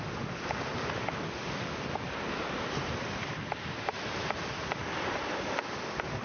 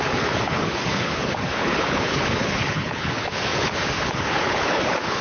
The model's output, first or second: second